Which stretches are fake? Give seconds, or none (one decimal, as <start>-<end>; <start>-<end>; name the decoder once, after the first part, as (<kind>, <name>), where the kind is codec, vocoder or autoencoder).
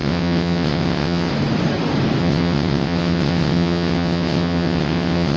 0.0-1.3 (vocoder, WaveNeXt); 2.2-5.4